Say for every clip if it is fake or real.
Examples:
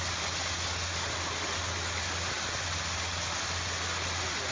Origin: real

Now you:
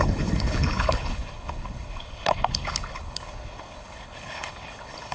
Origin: fake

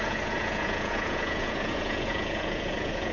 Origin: fake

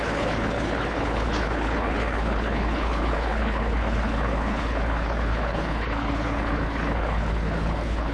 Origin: fake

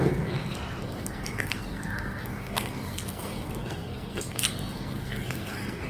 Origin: fake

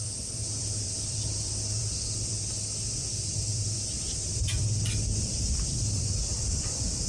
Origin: fake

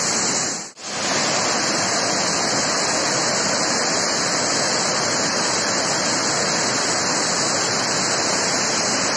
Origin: real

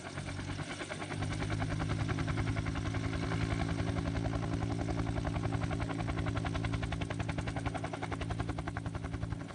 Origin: real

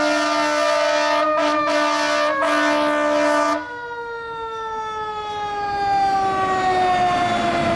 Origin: real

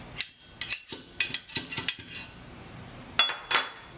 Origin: real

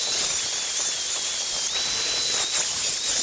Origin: real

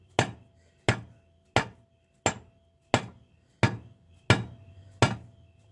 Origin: real